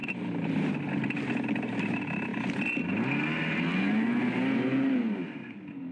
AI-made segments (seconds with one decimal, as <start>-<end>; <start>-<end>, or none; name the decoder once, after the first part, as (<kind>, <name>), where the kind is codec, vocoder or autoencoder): none